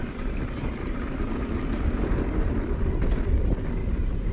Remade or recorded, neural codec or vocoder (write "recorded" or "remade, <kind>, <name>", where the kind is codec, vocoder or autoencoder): recorded